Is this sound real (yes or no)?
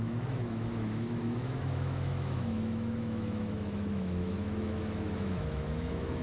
no